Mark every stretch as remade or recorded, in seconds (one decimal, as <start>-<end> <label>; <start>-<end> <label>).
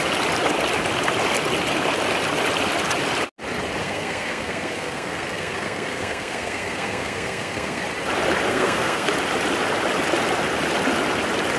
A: 0.0-3.8 recorded; 3.8-7.8 remade; 7.8-8.5 recorded; 8.5-9.1 remade; 9.1-11.6 recorded